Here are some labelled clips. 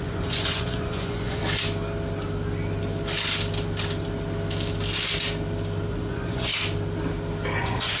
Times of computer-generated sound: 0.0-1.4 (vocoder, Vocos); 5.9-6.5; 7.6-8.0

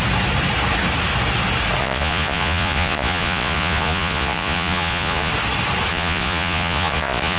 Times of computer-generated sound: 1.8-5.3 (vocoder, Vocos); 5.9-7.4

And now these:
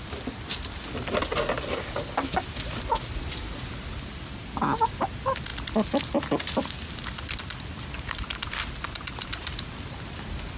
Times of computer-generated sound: none